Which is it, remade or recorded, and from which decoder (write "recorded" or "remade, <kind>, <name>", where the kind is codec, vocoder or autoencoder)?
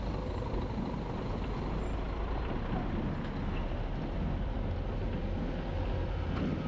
recorded